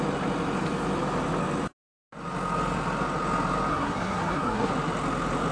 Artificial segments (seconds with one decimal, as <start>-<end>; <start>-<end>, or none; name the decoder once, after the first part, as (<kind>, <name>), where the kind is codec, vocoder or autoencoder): 3.7-4.7 (codec, SNAC)